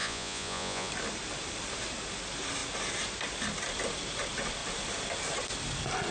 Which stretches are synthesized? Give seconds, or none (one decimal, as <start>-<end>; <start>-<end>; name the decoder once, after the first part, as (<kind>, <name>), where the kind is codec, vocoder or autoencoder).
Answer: 0.0-0.9 (vocoder, Vocos)